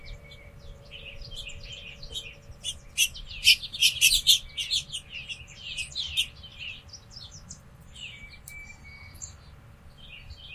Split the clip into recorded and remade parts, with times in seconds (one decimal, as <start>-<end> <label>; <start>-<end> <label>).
0.0-1.5 remade; 1.5-3.8 recorded; 3.8-4.3 remade; 4.3-6.5 recorded; 6.5-7.9 remade; 7.9-10.5 recorded